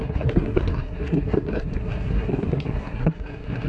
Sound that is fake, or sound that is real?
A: fake